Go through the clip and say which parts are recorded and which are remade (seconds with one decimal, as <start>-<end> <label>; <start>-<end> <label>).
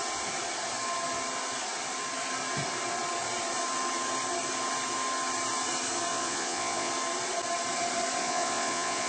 0.0-6.1 recorded; 6.1-6.9 remade; 6.9-8.2 recorded; 8.2-9.1 remade